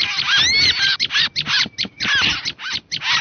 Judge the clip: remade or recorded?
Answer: recorded